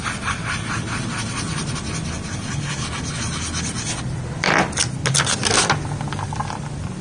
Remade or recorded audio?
recorded